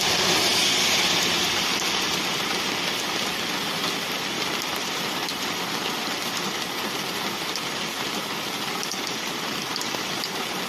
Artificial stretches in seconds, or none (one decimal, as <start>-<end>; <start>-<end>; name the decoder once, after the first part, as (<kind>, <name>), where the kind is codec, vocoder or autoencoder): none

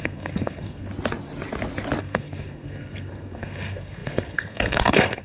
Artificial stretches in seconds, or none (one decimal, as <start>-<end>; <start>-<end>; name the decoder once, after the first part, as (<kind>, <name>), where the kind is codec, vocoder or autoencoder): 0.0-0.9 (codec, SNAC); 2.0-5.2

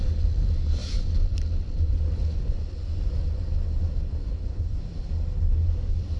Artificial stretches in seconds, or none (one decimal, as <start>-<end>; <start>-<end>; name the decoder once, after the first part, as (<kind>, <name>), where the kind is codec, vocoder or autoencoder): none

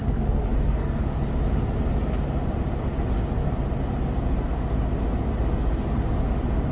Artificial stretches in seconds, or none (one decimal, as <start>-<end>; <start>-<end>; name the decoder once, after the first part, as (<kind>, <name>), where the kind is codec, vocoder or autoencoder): 0.0-1.2 (codec, SNAC)

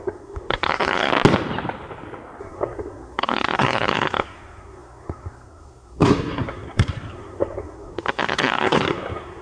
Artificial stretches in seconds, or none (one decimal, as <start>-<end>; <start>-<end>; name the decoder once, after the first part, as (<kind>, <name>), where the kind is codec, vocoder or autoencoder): 0.0-1.1 (codec, SNAC); 2.4-9.4

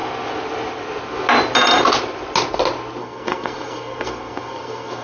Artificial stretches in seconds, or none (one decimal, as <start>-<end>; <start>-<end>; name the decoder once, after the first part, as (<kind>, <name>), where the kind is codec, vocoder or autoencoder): 3.0-5.0 (codec, SNAC)

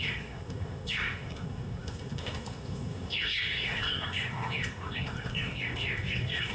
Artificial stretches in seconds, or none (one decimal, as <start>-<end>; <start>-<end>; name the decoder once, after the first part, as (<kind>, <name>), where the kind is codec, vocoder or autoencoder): 0.0-6.5 (codec, SNAC)

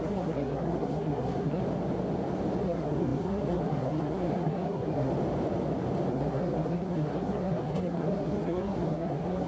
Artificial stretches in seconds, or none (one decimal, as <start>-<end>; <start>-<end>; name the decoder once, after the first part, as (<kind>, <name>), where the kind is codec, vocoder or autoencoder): 0.0-1.6 (codec, SNAC); 2.6-5.1; 6.1-9.5